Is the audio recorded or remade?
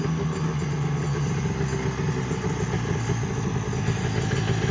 recorded